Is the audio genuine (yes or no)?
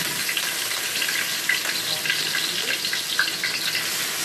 yes